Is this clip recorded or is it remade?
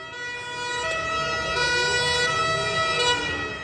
recorded